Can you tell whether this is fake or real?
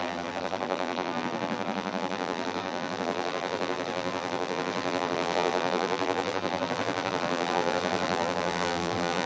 fake